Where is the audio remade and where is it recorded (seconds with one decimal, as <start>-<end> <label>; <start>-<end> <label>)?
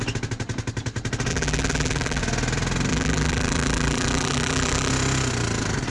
0.0-1.3 recorded; 1.3-2.2 remade; 2.2-2.9 recorded; 2.9-4.9 remade; 4.9-5.9 recorded